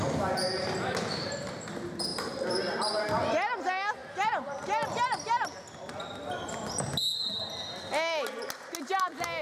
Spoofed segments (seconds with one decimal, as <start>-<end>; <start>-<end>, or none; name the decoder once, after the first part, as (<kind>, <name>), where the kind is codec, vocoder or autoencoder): 2.1-3.0 (vocoder, BigVGAN v2)